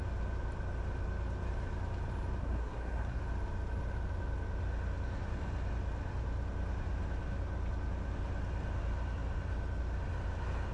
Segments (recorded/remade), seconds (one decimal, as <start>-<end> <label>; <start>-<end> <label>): 0.0-2.4 recorded; 2.4-3.2 remade; 3.2-10.7 recorded